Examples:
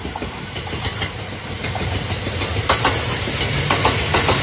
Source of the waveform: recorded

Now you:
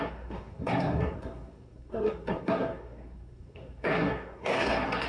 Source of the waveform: remade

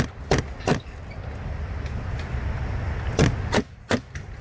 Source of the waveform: recorded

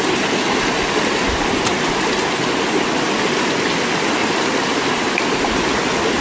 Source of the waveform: recorded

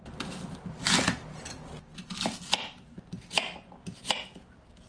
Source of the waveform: recorded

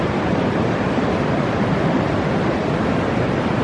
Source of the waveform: recorded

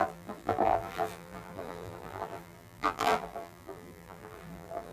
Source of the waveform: remade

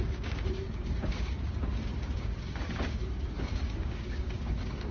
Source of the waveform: remade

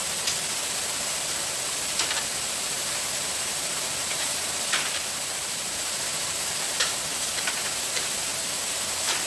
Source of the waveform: remade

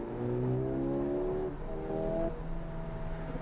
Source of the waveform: recorded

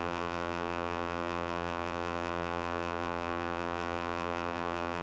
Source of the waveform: remade